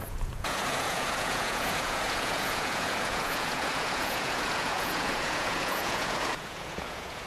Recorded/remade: remade